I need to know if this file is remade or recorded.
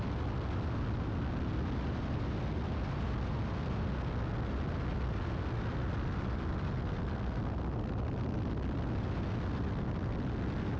recorded